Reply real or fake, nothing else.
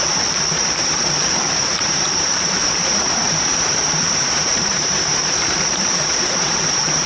fake